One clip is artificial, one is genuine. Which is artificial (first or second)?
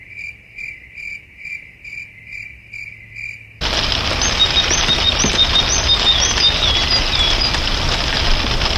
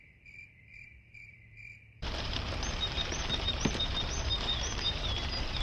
second